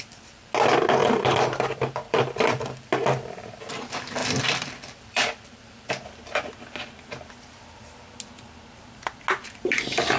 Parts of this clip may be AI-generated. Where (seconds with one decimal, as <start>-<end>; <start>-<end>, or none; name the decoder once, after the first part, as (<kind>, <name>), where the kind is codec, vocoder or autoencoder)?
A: 1.0-3.8 (vocoder, BigVGAN v2); 4.2-5.9